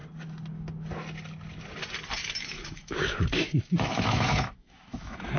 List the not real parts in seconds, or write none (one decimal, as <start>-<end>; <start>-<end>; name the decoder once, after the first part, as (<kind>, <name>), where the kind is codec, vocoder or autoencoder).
2.2-5.4 (autoencoder, DAC-VAE)